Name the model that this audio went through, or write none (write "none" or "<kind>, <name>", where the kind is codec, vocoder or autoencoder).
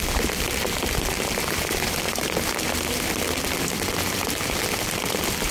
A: none